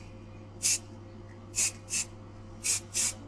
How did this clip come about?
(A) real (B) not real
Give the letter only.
A